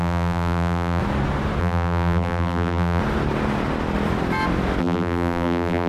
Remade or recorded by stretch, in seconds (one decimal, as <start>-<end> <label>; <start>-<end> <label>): 0.0-1.0 remade; 1.0-1.6 recorded; 1.6-3.0 remade; 3.0-4.8 recorded; 4.8-5.9 remade